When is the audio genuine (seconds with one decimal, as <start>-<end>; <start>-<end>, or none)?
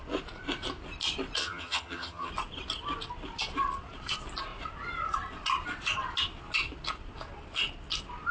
0.0-1.4; 2.3-8.3